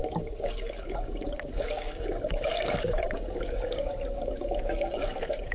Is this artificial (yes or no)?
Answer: yes